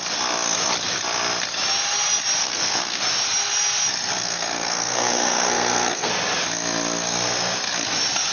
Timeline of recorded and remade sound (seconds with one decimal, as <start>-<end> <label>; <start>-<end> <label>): 0.0-2.4 recorded; 2.4-3.0 remade; 3.0-4.2 recorded; 4.2-6.1 remade; 6.1-8.3 recorded